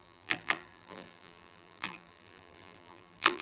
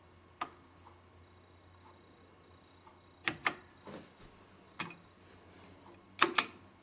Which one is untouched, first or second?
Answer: second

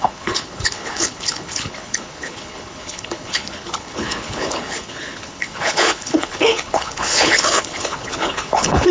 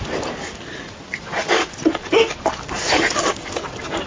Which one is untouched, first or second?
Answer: second